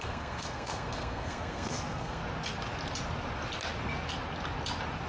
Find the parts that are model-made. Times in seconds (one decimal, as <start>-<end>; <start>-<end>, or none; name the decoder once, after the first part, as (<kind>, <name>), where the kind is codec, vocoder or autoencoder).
0.0-2.2 (codec, SNAC)